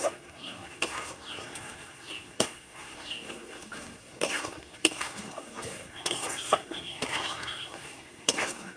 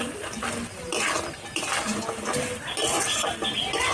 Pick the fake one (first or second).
first